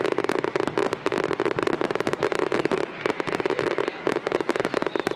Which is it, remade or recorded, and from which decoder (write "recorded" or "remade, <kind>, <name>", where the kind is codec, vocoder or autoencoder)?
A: remade, vocoder, BigVGAN v2